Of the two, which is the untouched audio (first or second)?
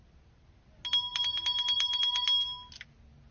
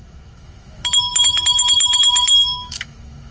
first